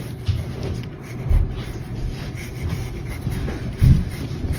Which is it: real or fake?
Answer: fake